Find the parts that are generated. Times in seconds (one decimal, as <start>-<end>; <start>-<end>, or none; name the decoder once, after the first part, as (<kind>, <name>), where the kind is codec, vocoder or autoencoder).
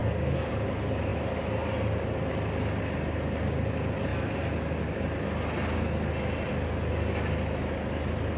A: 0.0-0.5 (codec, DAC)